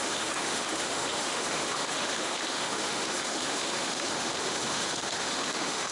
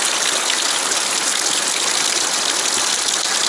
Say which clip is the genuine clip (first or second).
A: second